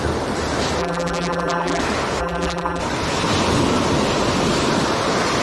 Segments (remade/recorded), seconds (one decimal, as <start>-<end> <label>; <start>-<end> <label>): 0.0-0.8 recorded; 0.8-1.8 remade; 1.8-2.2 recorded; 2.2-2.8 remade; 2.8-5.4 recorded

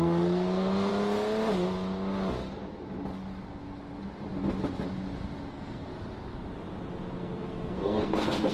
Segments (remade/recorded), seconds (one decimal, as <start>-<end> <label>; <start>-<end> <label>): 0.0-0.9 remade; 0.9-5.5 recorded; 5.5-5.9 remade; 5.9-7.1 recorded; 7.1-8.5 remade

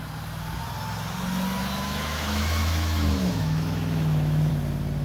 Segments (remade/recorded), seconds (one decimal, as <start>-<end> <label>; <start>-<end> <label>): 0.0-1.6 recorded; 1.6-4.5 remade; 4.5-5.0 recorded

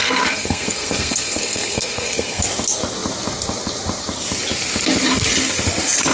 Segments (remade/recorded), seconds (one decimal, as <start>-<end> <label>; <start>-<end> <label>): 0.0-2.4 remade; 2.4-6.1 recorded

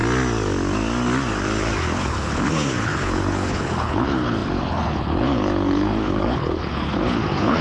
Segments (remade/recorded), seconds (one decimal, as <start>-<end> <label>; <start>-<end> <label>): 0.0-1.8 recorded; 1.8-7.6 remade